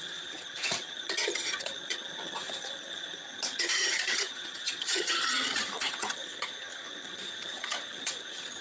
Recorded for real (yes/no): no